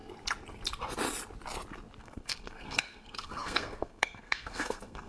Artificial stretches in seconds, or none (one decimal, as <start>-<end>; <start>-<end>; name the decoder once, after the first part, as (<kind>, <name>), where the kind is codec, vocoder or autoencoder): 2.0-5.1 (codec, SNAC)